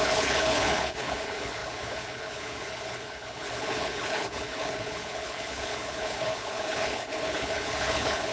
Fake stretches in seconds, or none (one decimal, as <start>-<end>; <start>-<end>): 0.0-8.3